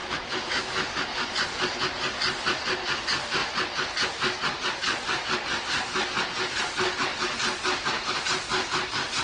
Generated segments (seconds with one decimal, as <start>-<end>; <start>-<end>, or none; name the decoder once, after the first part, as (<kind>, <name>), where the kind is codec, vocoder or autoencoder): 0.0-1.3 (autoencoder, DAC-VAE)